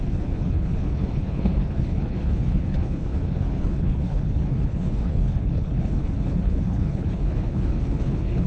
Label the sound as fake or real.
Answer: fake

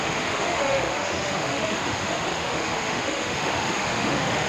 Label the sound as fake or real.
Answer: fake